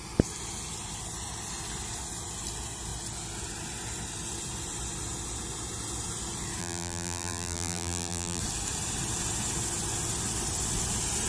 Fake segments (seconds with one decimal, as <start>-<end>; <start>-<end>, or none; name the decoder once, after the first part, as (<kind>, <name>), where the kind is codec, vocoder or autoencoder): 6.6-8.4 (vocoder, BigVGAN v2)